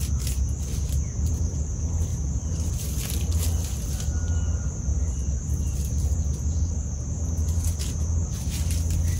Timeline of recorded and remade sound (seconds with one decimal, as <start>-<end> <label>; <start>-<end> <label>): 0.0-2.1 recorded; 2.1-2.7 remade; 2.7-9.2 recorded